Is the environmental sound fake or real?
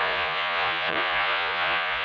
fake